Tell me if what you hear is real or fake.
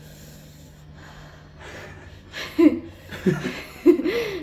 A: real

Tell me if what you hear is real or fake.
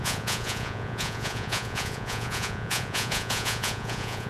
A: fake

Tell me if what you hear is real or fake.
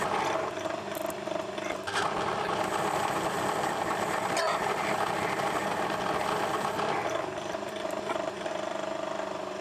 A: fake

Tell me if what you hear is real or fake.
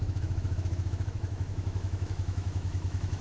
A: fake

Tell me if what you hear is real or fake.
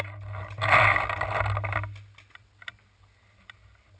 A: real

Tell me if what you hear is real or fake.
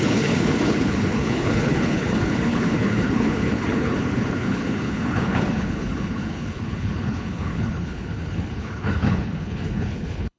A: fake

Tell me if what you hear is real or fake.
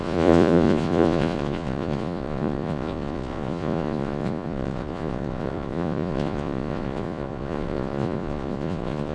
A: fake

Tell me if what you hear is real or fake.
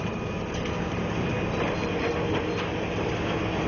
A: real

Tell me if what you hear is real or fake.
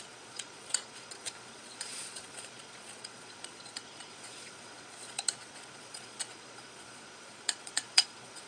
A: fake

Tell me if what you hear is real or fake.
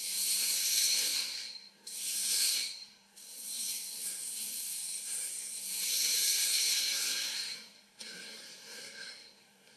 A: fake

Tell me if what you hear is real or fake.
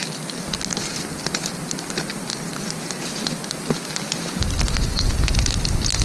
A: real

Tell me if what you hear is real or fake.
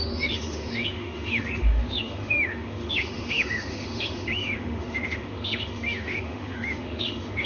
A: fake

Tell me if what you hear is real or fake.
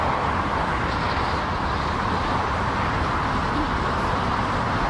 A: real